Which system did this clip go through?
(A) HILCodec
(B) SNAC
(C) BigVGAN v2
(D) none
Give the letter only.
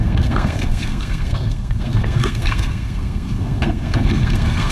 B